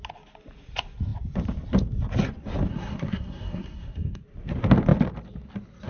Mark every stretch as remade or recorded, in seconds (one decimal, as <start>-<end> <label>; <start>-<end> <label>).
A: 0.0-2.7 recorded; 2.7-4.2 remade; 4.2-5.9 recorded